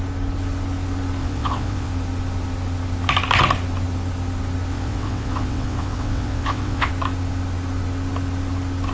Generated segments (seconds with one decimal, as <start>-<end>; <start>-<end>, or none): 1.2-1.9; 4.7-6.9